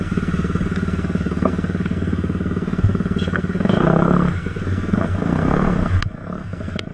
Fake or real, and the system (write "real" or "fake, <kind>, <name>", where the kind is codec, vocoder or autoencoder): fake, codec, SNAC